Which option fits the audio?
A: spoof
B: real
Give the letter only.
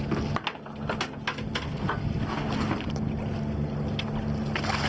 B